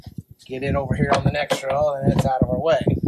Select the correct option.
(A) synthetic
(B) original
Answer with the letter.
B